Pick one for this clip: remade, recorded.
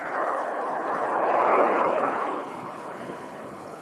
remade